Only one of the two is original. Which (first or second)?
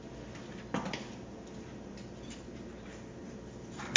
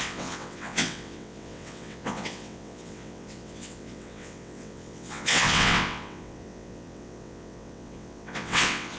first